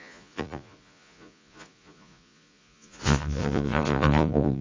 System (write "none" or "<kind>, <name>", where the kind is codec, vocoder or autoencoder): vocoder, Vocos